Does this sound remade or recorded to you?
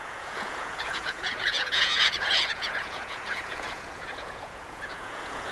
remade